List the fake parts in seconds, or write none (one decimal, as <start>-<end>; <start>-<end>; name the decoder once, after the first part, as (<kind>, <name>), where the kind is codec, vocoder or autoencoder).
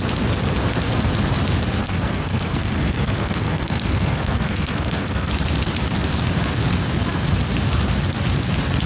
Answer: 1.8-5.3 (codec, SNAC)